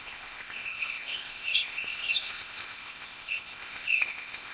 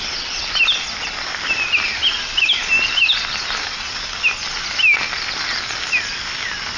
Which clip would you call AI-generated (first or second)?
first